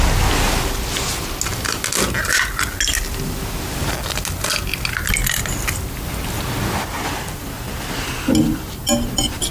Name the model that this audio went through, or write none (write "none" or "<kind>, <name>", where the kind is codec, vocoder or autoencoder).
none